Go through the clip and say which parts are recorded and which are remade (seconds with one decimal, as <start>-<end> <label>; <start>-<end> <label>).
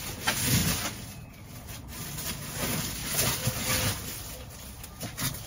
0.0-5.5 recorded